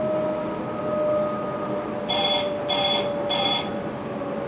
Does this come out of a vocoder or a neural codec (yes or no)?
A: no